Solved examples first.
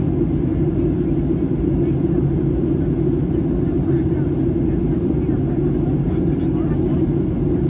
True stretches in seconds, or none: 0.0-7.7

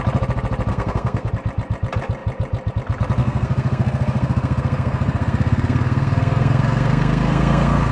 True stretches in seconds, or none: 0.0-0.7; 1.3-3.2

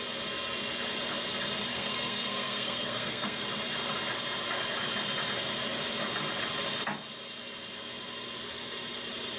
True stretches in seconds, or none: 0.0-1.7; 3.4-9.4

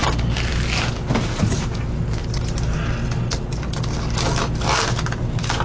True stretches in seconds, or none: 0.0-5.6

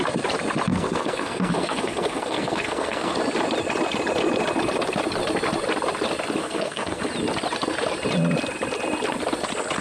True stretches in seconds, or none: 0.0-0.7; 3.2-6.4; 7.0-9.8

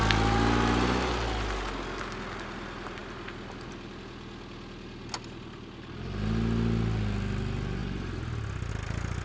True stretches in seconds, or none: 0.0-9.2

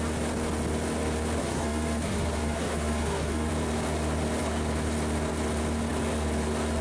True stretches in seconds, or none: 0.0-1.4; 3.5-6.8

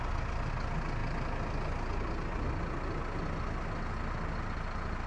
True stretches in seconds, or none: 0.0-5.1